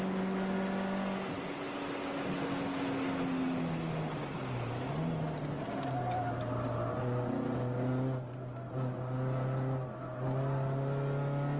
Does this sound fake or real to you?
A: real